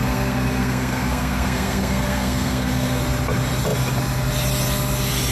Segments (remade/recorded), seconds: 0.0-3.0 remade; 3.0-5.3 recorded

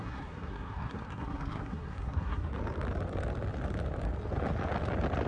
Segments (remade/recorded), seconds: 0.0-2.5 remade; 2.5-5.3 recorded